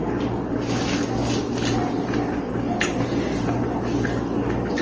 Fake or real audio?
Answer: real